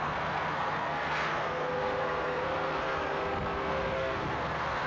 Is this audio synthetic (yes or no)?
yes